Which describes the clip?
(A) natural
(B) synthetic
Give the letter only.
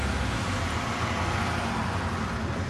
A